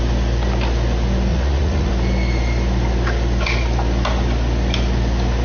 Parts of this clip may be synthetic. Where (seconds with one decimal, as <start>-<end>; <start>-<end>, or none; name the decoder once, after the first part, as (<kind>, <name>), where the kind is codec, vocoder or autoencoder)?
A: 1.3-1.9 (vocoder, Vocos)